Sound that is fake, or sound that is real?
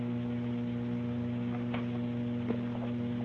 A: real